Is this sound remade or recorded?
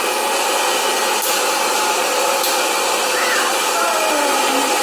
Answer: recorded